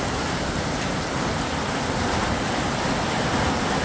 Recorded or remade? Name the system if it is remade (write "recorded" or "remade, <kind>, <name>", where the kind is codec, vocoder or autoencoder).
recorded